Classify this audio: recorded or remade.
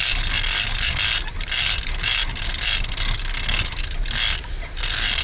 recorded